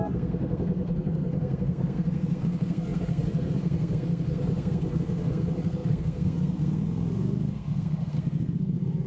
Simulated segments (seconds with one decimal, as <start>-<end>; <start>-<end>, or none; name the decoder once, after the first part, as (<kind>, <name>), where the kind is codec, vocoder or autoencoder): 0.0-9.1 (codec, SNAC)